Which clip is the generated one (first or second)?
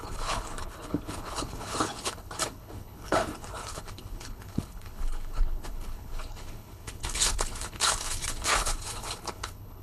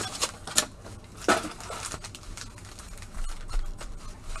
first